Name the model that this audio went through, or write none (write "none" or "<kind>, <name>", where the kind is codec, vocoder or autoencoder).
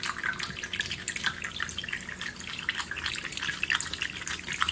none